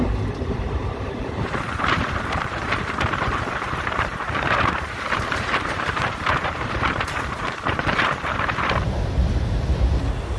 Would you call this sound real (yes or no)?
no